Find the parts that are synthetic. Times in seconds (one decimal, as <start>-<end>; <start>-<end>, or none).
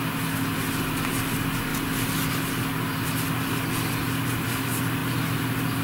none